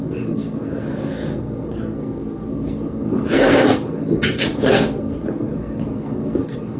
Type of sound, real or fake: fake